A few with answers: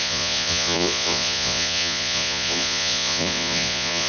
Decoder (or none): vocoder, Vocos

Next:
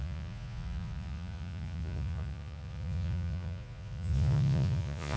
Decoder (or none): vocoder, Vocos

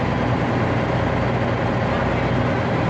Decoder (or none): none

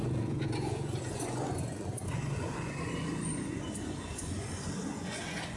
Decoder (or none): vocoder, Vocos